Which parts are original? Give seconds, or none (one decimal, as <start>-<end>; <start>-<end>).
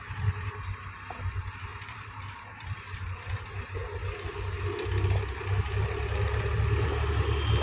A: 0.0-1.7; 2.6-7.6